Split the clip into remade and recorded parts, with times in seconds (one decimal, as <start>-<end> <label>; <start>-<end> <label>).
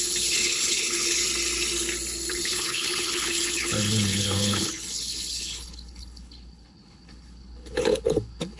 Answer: 0.0-1.2 remade; 1.2-2.3 recorded; 2.3-8.6 remade